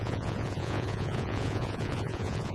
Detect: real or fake fake